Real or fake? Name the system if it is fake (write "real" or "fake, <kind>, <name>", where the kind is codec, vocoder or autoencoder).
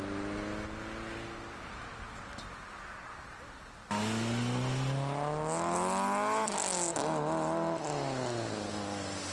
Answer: real